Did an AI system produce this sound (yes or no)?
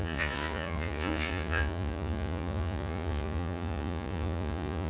yes